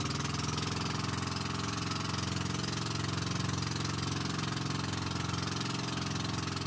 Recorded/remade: recorded